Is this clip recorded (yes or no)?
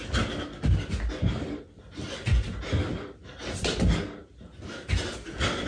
yes